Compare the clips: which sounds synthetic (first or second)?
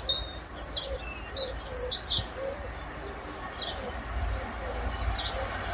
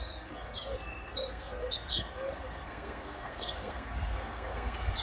second